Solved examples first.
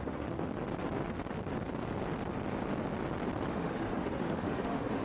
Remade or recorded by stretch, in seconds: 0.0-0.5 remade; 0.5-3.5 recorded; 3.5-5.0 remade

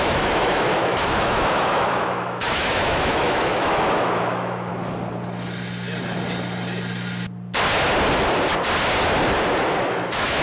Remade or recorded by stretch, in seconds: 0.0-4.7 remade; 4.7-9.9 recorded; 9.9-10.4 remade

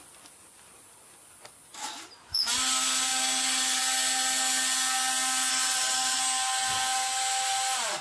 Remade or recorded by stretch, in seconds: 0.0-5.5 recorded; 5.5-6.2 remade; 6.2-8.0 recorded

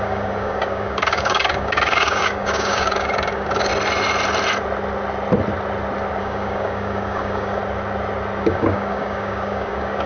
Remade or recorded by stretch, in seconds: 0.0-3.7 remade; 3.7-6.2 recorded; 6.2-7.6 remade; 7.6-8.4 recorded; 8.4-10.1 remade

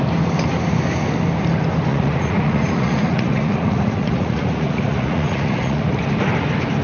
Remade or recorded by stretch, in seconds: 0.0-1.9 recorded; 1.9-6.0 remade; 6.0-6.8 recorded